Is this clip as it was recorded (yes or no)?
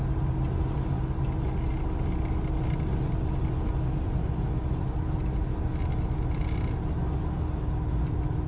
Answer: yes